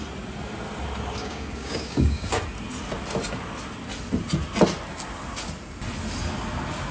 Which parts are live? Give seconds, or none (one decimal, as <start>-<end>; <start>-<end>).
0.0-1.2; 2.4-6.9